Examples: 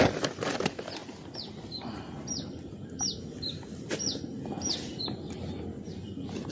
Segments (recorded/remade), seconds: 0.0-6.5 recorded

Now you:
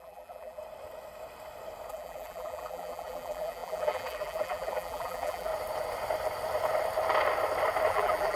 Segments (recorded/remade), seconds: 0.0-0.6 remade; 0.6-1.9 recorded; 1.9-5.5 remade; 5.5-7.9 recorded; 7.9-8.4 remade

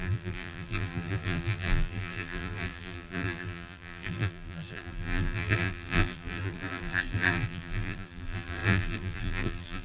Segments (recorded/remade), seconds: 0.0-9.8 remade

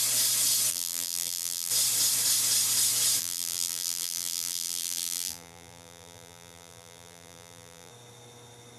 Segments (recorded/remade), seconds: 0.0-0.7 recorded; 0.7-1.7 remade; 1.7-3.2 recorded; 3.2-7.9 remade; 7.9-8.8 recorded

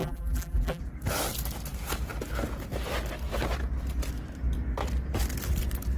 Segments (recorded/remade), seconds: 0.0-0.8 remade; 0.8-6.0 recorded

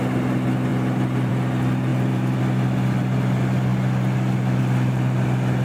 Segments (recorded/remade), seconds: 0.0-1.9 recorded; 1.9-2.4 remade; 2.4-5.6 recorded